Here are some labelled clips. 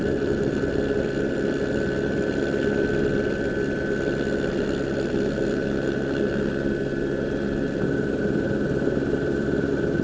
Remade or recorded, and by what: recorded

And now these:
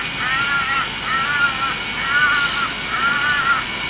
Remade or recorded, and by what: recorded